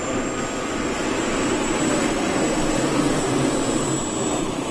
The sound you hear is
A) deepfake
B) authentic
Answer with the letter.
B